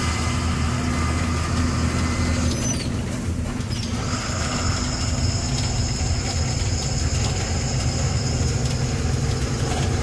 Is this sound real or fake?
real